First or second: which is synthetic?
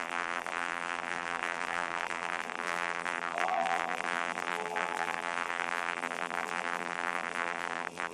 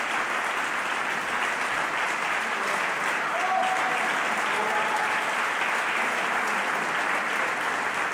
first